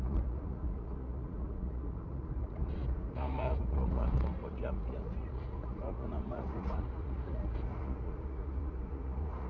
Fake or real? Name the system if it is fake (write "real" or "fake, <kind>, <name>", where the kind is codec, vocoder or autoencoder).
fake, vocoder, Vocos